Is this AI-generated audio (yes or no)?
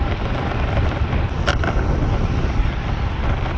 no